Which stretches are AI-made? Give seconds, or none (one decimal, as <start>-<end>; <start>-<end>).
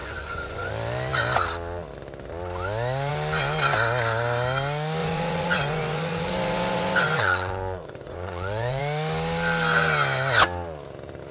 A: 0.0-0.7; 5.0-8.8